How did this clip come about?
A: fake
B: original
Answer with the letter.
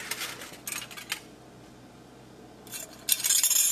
B